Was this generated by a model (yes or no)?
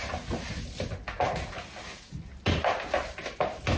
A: no